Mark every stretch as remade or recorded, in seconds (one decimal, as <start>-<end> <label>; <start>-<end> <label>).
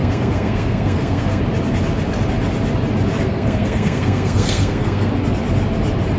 0.0-1.4 remade; 1.4-3.1 recorded; 3.1-5.1 remade; 5.1-6.2 recorded